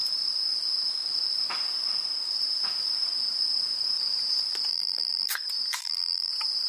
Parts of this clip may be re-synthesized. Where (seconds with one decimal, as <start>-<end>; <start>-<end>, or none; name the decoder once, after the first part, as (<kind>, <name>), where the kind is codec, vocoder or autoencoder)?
4.7-5.3 (vocoder, BigVGAN v2); 5.8-6.3